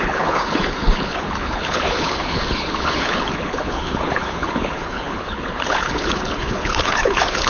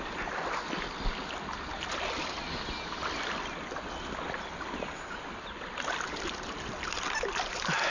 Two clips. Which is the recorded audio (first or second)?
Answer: second